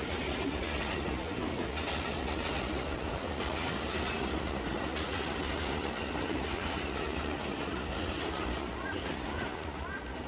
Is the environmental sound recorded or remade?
remade